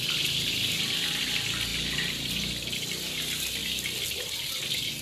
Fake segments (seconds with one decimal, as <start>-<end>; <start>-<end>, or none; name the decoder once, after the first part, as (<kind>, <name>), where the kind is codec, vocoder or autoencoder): 1.7-2.5 (vocoder, BigVGAN v2)